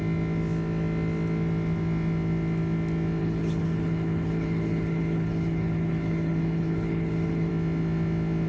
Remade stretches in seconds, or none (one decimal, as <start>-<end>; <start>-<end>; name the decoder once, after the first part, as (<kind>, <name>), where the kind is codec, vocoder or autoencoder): 3.2-7.5 (codec, HILCodec)